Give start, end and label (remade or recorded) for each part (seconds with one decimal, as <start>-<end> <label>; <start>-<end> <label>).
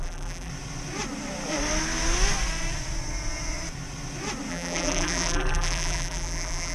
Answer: 0.0-0.5 remade; 0.5-4.5 recorded; 4.5-6.7 remade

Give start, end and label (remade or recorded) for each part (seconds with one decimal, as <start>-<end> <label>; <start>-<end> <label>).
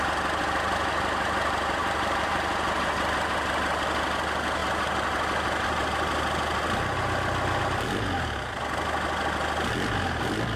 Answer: 0.0-1.8 recorded; 1.8-2.5 remade; 2.5-10.6 recorded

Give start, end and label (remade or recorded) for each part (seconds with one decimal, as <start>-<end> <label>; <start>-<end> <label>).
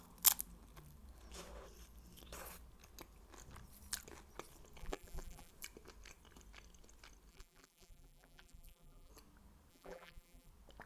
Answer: 0.0-4.8 recorded; 4.8-5.5 remade; 5.5-7.3 recorded; 7.3-9.1 remade; 9.1-9.7 recorded; 9.7-10.5 remade; 10.5-10.9 recorded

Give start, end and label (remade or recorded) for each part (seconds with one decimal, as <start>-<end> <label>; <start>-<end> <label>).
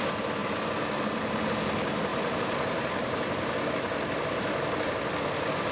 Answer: 0.0-0.4 recorded; 0.4-1.4 remade; 1.4-2.1 recorded; 2.1-4.9 remade; 4.9-5.7 recorded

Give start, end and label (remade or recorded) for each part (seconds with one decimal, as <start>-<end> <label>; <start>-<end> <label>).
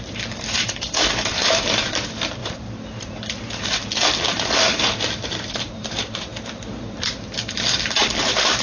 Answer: 0.0-6.3 remade; 6.3-8.2 recorded; 8.2-8.6 remade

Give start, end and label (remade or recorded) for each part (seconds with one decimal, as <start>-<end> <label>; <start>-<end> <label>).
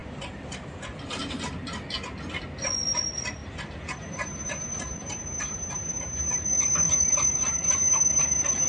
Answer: 0.0-1.5 remade; 1.5-3.4 recorded; 3.4-7.9 remade; 7.9-8.7 recorded